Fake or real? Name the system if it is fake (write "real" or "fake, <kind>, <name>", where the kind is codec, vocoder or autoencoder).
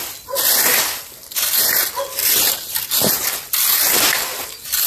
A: real